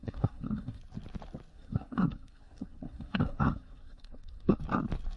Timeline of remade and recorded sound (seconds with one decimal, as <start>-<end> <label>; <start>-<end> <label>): 0.0-0.8 remade; 0.8-1.5 recorded; 1.5-4.6 remade; 4.6-5.2 recorded